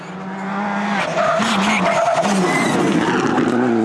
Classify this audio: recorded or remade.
recorded